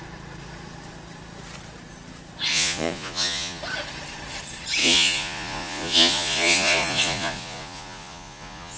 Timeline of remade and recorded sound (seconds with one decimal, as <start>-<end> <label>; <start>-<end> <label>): 0.0-2.5 recorded; 2.5-3.6 remade; 3.6-4.8 recorded; 4.8-8.8 remade